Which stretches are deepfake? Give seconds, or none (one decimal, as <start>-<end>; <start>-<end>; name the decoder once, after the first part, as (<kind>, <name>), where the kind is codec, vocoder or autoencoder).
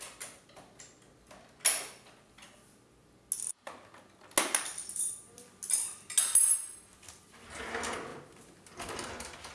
none